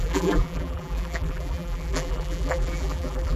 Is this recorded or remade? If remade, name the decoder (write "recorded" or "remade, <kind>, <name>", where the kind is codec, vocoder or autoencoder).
remade, vocoder, BigVGAN v2